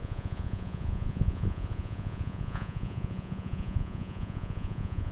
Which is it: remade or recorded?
remade